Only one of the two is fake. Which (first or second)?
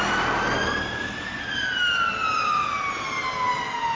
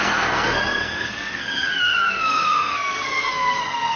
second